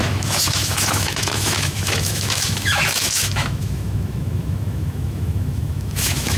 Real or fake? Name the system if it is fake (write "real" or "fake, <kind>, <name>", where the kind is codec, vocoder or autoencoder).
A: fake, autoencoder, DAC-VAE